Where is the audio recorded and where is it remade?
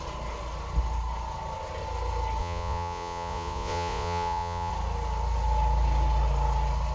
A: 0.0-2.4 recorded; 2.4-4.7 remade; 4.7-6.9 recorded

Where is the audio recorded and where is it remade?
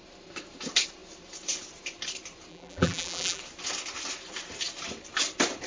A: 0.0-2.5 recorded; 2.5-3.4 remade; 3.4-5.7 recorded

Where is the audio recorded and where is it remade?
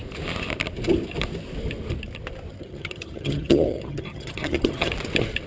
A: 0.0-2.5 recorded; 2.5-4.9 remade; 4.9-5.5 recorded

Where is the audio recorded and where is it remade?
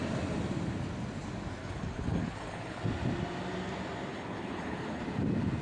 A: 0.0-1.6 recorded; 1.6-2.8 remade; 2.8-4.1 recorded; 4.1-5.0 remade; 5.0-5.6 recorded